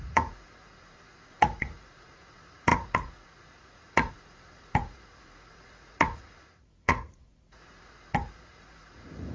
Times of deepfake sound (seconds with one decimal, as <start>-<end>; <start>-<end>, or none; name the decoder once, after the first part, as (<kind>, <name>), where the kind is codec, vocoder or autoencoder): 0.0-9.3 (vocoder, Vocos)